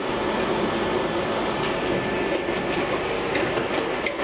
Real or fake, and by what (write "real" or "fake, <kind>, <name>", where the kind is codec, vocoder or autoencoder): real